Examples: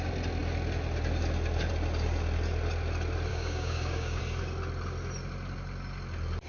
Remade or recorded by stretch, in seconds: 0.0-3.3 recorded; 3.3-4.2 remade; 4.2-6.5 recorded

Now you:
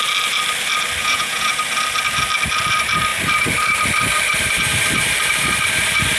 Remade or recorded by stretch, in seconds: 0.0-1.0 recorded; 1.0-1.5 remade; 1.5-6.2 recorded

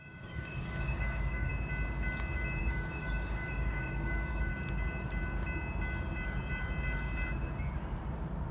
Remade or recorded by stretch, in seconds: 0.0-1.5 remade; 1.5-2.6 recorded; 2.6-4.5 remade; 4.5-8.5 recorded

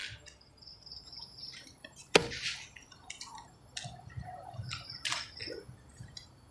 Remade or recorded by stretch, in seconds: 0.0-0.7 recorded; 0.7-2.0 remade; 2.0-5.9 recorded; 5.9-6.5 remade

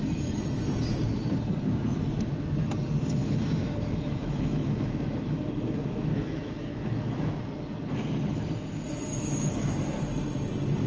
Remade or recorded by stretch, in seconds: 0.0-3.2 recorded; 3.2-7.3 remade; 7.3-9.1 recorded; 9.1-9.7 remade; 9.7-10.9 recorded

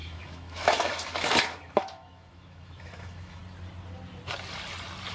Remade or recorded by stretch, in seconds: 0.0-3.4 remade; 3.4-5.1 recorded